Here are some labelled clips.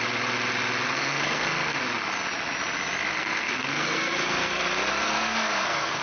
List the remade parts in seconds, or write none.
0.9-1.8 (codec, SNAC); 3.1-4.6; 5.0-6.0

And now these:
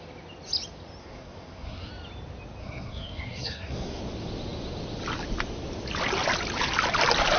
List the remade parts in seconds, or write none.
1.0-1.9 (codec, SNAC); 2.6-4.0

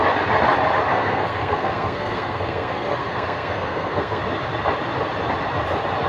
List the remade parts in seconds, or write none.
0.9-4.2 (codec, SNAC)

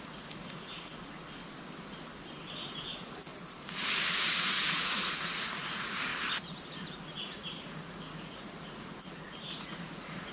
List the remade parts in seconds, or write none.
0.0-1.2 (vocoder, Vocos); 2.5-3.3; 4.1-6.1; 7.1-10.3

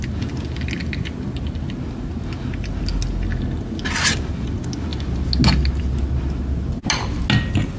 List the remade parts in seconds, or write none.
none

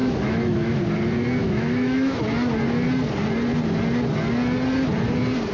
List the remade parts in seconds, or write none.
0.0-0.8 (autoencoder, DAC-VAE); 1.4-2.2

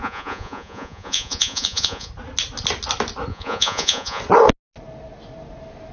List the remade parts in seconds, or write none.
0.0-2.1 (vocoder, Vocos); 3.3-4.2